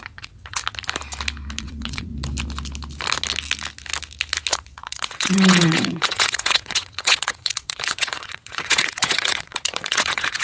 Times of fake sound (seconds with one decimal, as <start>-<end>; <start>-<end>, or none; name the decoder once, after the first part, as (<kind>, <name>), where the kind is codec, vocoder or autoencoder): 0.0-0.6 (vocoder, WaveNeXt); 1.6-2.1; 4.5-10.4